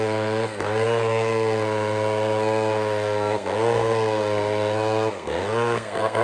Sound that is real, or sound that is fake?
fake